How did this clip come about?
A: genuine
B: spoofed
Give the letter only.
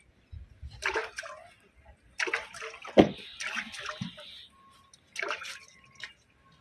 A